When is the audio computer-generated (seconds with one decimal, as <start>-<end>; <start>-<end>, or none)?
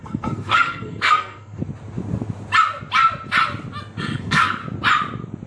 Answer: 0.0-1.6; 4.0-4.6